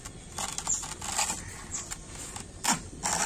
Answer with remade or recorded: recorded